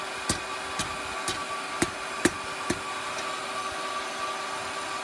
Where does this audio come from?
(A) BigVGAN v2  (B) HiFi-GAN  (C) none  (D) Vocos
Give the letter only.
C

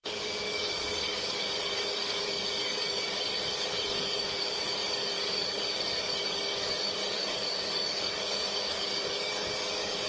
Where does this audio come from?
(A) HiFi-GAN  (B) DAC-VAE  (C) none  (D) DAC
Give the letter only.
D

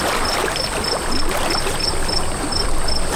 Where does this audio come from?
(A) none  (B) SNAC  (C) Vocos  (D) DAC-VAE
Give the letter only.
A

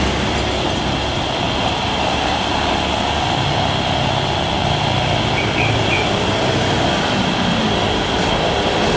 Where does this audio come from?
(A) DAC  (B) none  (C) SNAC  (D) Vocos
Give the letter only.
B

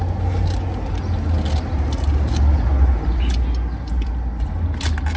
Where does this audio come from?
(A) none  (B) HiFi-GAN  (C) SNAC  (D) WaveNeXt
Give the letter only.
A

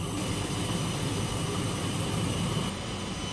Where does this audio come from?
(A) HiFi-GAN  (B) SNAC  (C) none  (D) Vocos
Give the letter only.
C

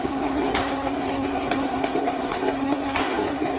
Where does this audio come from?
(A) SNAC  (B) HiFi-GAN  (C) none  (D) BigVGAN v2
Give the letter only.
A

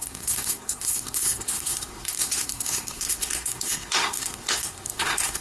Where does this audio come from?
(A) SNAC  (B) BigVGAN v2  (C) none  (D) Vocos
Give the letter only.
A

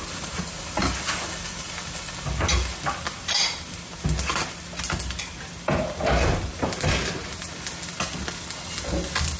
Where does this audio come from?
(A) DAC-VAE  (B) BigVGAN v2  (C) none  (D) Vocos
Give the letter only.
C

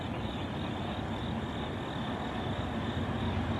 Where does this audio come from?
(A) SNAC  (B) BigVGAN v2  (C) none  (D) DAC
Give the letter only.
C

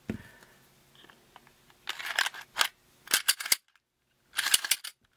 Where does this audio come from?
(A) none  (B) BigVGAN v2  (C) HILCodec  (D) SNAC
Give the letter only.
A